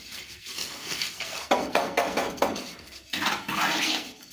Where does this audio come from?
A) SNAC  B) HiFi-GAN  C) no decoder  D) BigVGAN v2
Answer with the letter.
A